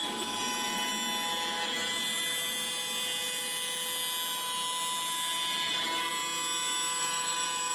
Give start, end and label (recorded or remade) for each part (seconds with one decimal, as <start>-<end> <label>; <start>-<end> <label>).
0.0-0.9 remade; 0.9-5.5 recorded; 5.5-6.1 remade; 6.1-7.0 recorded; 7.0-7.7 remade